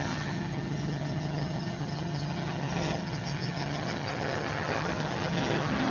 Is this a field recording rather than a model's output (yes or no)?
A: no